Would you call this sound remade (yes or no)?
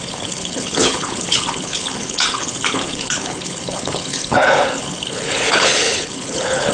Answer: yes